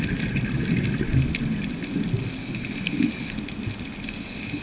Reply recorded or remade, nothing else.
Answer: recorded